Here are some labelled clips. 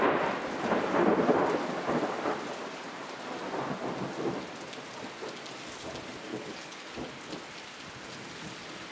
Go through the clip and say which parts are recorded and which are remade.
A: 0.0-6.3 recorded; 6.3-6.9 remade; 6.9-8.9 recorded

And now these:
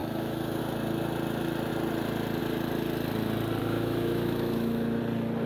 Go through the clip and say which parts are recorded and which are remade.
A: 0.0-0.6 remade; 0.6-3.6 recorded; 3.6-5.0 remade; 5.0-5.5 recorded

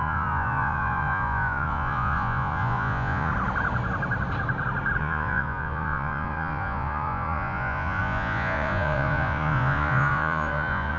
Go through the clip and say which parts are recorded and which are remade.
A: 0.0-3.3 remade; 3.3-5.0 recorded; 5.0-11.0 remade

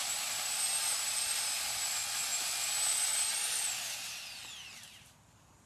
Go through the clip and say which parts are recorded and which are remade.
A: 0.0-5.7 recorded

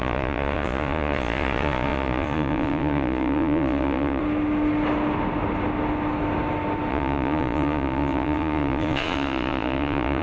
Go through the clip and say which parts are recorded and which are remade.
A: 0.0-4.2 remade; 4.2-6.9 recorded; 6.9-10.2 remade